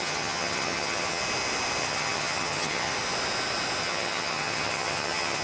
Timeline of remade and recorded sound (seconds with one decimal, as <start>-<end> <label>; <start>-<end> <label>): 0.0-1.2 remade; 1.2-1.8 recorded; 1.8-2.9 remade; 2.9-3.8 recorded; 3.8-5.4 remade